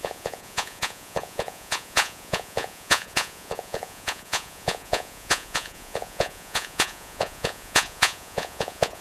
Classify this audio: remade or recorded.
remade